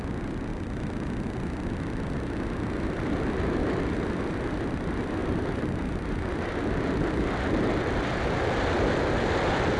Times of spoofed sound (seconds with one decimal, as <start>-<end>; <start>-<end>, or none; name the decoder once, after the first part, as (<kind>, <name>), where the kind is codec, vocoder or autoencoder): 5.2-6.6 (vocoder, BigVGAN v2)